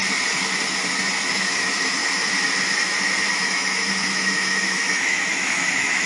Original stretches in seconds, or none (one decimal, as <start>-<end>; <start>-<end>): 0.0-1.3; 2.0-3.3